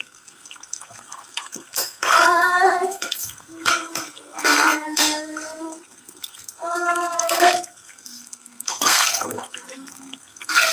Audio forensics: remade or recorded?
remade